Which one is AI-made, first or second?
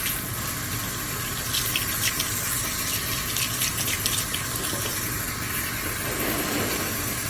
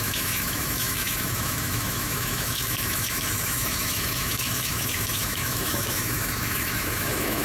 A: second